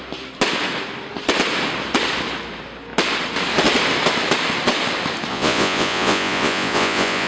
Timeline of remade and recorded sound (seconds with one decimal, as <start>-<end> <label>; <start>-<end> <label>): 0.0-5.3 recorded; 5.3-7.3 remade